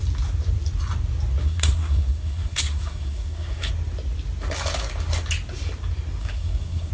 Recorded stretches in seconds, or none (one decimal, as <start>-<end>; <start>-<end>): 0.0-1.4; 3.7-6.2